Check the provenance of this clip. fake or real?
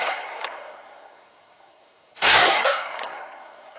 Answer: fake